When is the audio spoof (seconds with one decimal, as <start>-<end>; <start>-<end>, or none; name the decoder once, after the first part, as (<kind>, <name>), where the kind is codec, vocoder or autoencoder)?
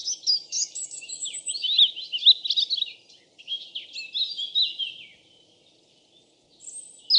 0.0-1.8 (autoencoder, DAC-VAE)